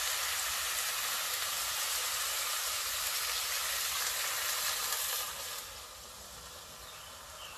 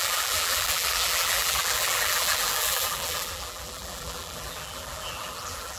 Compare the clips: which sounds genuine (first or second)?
first